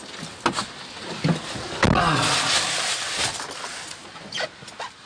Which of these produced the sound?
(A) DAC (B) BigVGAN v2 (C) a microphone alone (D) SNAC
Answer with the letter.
C